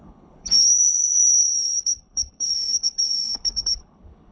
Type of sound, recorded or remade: remade